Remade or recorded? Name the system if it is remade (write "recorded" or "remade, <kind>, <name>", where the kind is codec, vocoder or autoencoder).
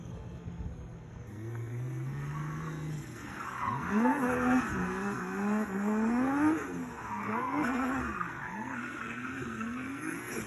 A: remade, codec, SNAC